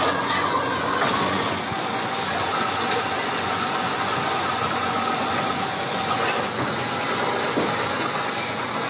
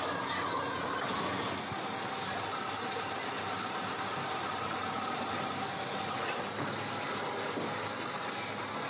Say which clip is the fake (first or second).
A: first